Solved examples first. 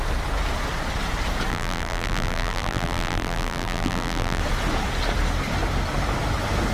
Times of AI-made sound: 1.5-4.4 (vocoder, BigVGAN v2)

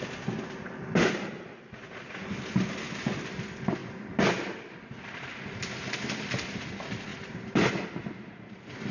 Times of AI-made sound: 7.1-7.7 (vocoder, BigVGAN v2)

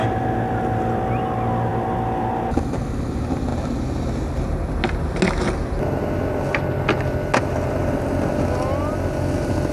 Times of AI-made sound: none

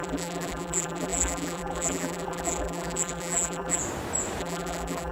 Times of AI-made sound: 0.0-3.8 (vocoder, BigVGAN v2); 4.4-5.1

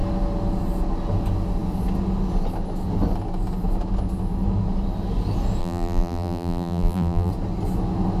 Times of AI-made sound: 5.6-7.3 (vocoder, BigVGAN v2)

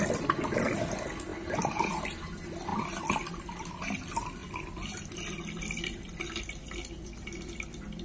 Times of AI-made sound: 1.3-1.9 (vocoder, BigVGAN v2)